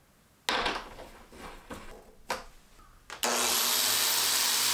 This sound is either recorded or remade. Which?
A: recorded